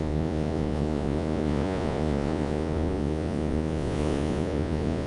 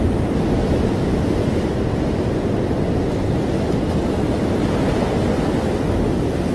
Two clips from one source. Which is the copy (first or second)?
first